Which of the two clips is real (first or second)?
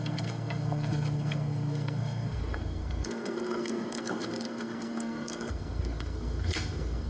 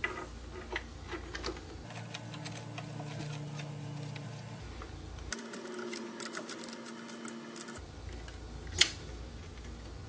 second